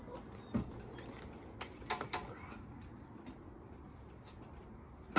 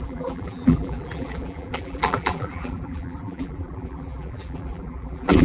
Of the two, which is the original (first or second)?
first